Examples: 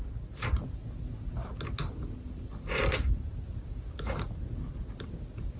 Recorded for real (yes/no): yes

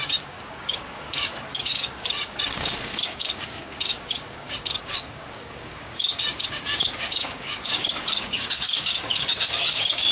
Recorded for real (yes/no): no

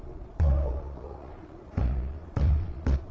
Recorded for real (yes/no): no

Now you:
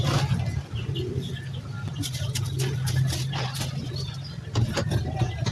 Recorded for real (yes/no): yes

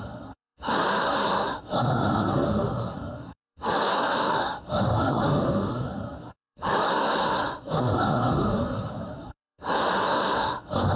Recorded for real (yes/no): no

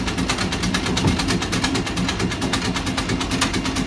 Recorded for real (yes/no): yes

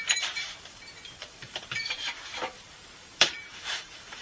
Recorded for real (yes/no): no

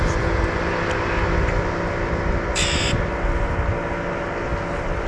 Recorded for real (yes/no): yes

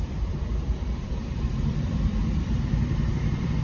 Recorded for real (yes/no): no